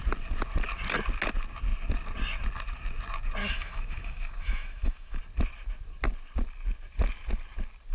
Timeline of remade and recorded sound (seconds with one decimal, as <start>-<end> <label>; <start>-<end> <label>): 0.0-3.4 recorded; 3.4-5.2 remade; 5.2-7.9 recorded